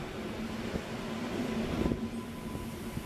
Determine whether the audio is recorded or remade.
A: recorded